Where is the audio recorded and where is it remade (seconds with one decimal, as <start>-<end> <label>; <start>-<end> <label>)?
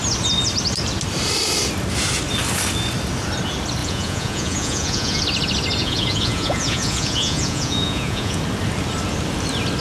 0.0-3.8 recorded; 3.8-5.2 remade; 5.2-5.8 recorded; 5.8-8.4 remade; 8.4-9.8 recorded